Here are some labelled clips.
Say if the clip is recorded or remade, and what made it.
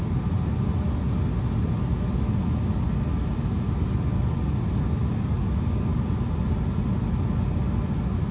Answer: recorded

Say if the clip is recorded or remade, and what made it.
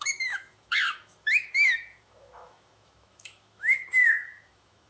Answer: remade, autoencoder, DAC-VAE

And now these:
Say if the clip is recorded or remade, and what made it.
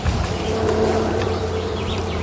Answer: remade, vocoder, BigVGAN v2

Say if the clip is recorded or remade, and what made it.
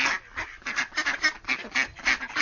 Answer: recorded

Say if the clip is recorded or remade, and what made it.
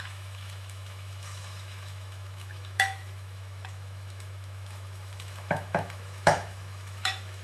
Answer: remade, autoencoder, DAC-VAE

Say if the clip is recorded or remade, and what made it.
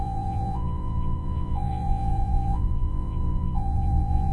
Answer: remade, vocoder, Vocos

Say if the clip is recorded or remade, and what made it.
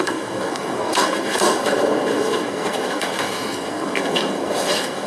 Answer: remade, codec, SNAC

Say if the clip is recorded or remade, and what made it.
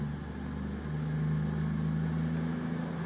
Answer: recorded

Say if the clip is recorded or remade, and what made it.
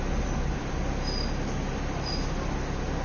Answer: recorded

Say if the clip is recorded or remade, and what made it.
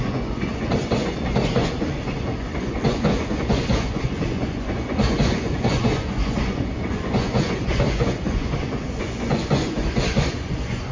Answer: remade, vocoder, Vocos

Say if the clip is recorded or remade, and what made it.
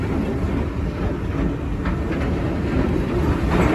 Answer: recorded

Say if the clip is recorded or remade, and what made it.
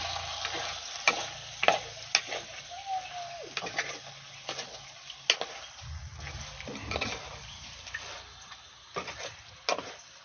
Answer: recorded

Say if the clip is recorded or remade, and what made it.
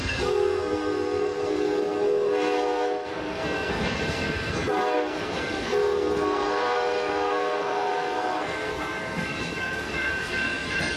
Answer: remade, codec, SNAC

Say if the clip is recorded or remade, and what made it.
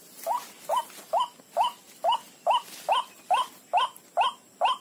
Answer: recorded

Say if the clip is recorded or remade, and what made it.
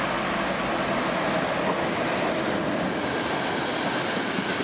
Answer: recorded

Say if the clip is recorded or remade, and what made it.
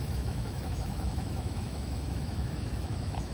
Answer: remade, autoencoder, DAC-VAE